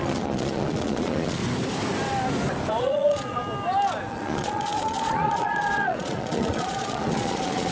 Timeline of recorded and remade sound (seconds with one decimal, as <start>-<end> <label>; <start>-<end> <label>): 0.0-1.4 remade; 1.4-2.8 recorded; 2.8-3.4 remade; 3.4-4.1 recorded; 4.1-7.7 remade